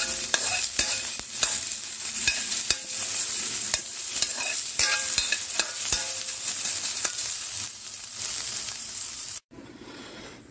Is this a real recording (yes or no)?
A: no